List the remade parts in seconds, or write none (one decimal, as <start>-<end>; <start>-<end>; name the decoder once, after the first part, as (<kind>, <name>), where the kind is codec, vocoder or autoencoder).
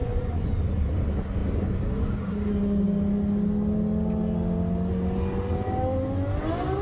0.0-0.5 (vocoder, Vocos)